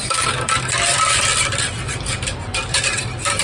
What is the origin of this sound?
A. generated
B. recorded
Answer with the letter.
A